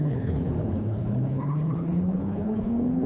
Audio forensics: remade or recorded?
remade